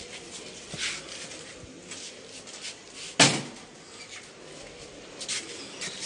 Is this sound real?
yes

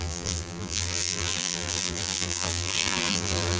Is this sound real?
no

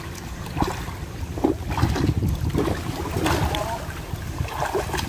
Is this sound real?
yes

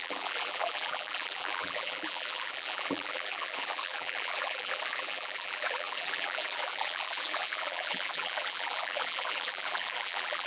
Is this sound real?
no